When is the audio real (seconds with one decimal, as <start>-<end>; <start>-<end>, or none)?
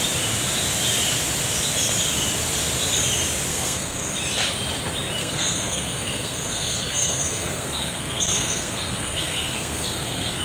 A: 0.0-3.5; 4.1-5.2